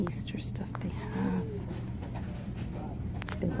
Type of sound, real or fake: real